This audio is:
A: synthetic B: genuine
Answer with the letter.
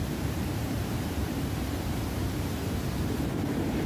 A